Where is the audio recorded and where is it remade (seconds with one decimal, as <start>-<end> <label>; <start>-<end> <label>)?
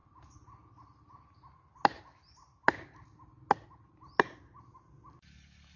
0.0-5.8 recorded